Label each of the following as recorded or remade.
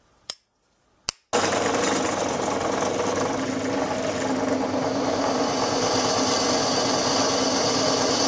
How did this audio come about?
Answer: recorded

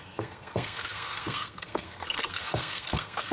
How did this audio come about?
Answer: remade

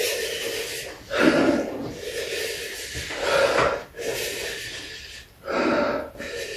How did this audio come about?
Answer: recorded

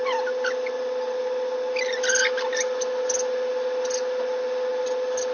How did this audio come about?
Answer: recorded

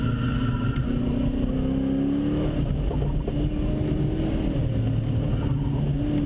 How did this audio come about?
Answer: recorded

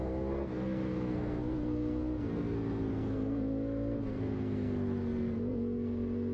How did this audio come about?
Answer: remade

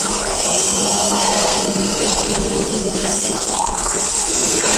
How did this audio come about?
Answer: remade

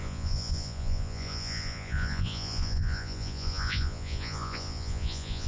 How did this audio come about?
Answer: remade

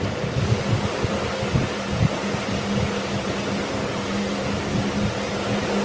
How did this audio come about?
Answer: recorded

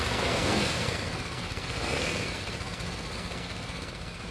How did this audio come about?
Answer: remade